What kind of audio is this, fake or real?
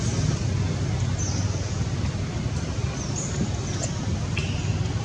real